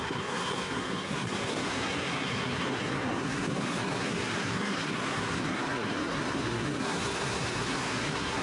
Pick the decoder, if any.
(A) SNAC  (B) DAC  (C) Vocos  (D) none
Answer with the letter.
A